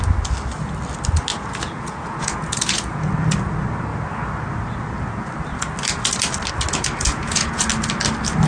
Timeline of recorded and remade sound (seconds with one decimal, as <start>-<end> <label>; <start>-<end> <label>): 0.0-1.3 recorded; 1.3-3.1 remade; 3.1-7.1 recorded; 7.1-7.7 remade; 7.7-8.5 recorded